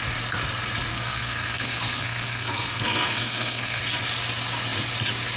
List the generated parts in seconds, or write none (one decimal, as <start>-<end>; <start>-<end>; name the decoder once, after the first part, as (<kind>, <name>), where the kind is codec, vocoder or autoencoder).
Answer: 0.9-3.8 (codec, SNAC)